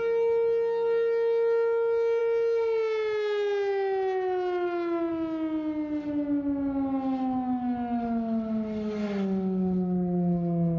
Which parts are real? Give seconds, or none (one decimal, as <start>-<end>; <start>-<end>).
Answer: 0.0-10.8